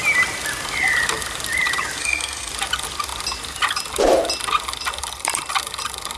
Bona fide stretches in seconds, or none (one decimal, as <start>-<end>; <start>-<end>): 0.0-2.0; 2.5-6.2

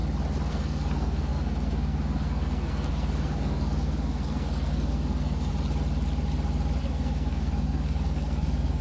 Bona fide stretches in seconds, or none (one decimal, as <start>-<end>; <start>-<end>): 0.0-0.5; 5.5-6.8

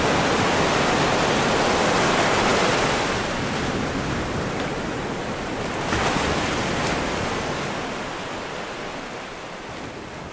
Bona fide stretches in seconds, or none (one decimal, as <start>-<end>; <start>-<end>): 0.0-10.3

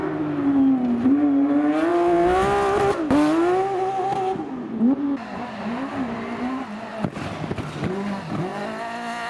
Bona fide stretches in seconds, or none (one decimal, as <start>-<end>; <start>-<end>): 0.0-9.3